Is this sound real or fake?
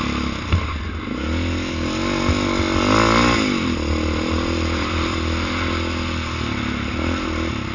real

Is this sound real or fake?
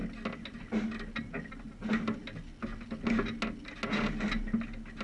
real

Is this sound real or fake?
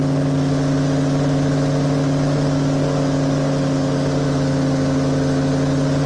real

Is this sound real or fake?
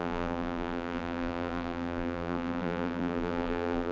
fake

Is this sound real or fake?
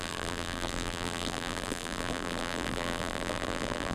fake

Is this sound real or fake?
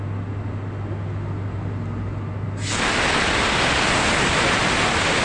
real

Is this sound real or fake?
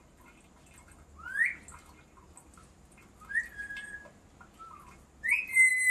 real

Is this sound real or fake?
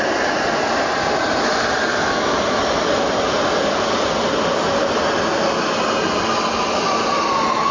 real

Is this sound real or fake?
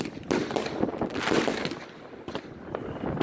real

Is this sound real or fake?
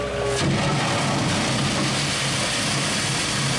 real